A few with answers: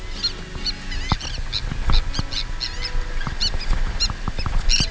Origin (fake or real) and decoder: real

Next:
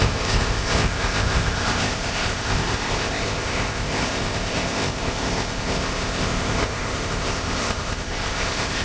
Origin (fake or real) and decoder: fake, codec, ZipCodec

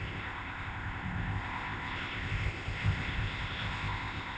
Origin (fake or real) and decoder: fake, codec, ZipCodec